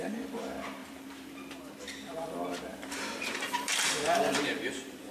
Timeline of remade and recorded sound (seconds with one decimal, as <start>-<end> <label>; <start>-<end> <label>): 0.0-0.8 recorded; 0.8-1.6 remade; 1.6-2.7 recorded; 2.7-5.1 remade